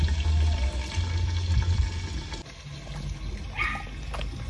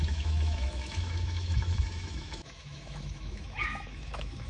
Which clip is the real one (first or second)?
first